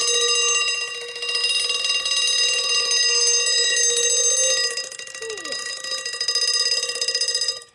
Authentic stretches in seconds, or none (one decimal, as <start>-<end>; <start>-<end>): 0.0-7.7